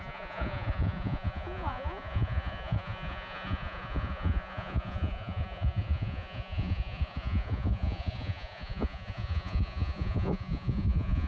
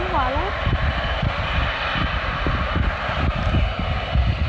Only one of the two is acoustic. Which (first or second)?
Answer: second